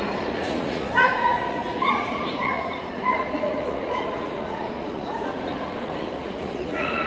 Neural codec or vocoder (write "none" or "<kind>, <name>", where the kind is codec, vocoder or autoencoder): vocoder, Vocos